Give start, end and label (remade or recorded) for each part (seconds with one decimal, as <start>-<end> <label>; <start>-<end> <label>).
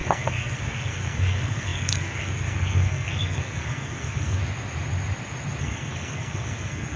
0.0-4.4 remade; 4.4-5.6 recorded; 5.6-7.0 remade